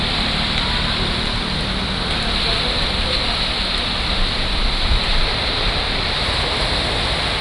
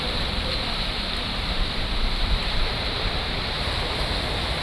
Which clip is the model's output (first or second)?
second